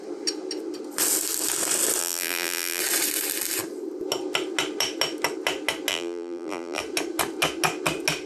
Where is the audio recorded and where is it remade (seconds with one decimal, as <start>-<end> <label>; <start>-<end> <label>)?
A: 0.0-2.0 recorded; 2.0-2.8 remade; 2.8-5.9 recorded; 5.9-6.8 remade; 6.8-8.3 recorded